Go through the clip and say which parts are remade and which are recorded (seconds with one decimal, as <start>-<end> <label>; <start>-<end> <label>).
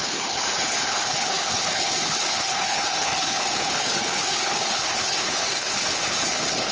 0.0-6.7 remade